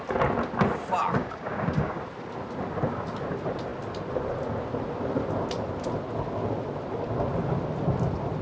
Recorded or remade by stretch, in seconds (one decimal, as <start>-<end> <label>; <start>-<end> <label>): 0.0-1.2 recorded; 1.2-2.0 remade; 2.0-8.4 recorded